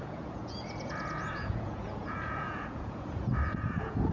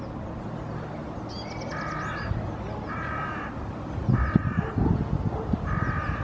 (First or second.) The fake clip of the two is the first